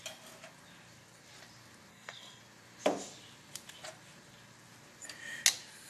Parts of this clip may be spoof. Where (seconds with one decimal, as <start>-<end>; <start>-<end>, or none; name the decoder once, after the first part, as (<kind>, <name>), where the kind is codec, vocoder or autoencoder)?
1.9-2.4 (codec, SNAC)

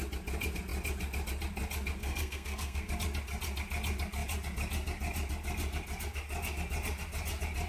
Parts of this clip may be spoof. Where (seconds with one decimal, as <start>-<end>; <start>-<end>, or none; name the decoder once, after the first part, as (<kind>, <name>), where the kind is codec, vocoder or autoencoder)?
2.0-2.9 (codec, SNAC)

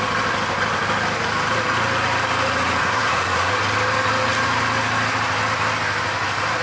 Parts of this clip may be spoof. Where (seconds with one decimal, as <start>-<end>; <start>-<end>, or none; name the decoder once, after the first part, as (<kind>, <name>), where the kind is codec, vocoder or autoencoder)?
2.8-3.5 (codec, SNAC)